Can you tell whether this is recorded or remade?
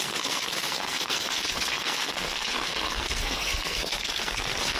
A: remade